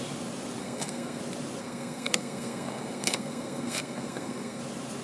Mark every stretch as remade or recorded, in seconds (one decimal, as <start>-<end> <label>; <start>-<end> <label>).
0.0-0.6 recorded; 0.6-1.2 remade; 1.2-1.6 recorded; 1.6-4.6 remade; 4.6-5.0 recorded